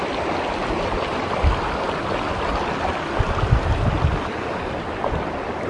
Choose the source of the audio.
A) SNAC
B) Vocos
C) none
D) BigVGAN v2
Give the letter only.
C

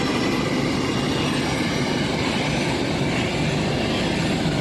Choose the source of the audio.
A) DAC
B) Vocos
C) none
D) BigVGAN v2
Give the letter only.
C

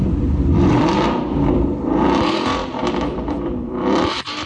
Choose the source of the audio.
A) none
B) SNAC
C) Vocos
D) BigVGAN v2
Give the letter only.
D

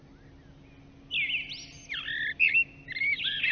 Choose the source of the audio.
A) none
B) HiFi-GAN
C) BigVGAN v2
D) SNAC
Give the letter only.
A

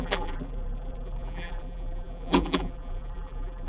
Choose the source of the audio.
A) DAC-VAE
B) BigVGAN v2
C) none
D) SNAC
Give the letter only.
B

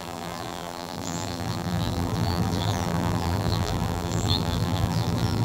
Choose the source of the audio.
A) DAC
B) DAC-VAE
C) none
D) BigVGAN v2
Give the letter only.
D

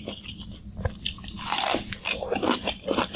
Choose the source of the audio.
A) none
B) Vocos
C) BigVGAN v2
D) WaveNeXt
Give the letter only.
A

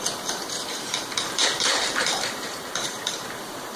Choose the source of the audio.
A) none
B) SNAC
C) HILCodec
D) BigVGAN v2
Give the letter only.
D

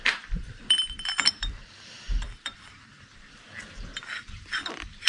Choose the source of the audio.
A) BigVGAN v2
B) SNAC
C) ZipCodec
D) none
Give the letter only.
A